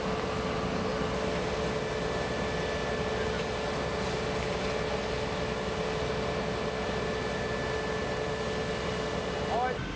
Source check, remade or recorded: recorded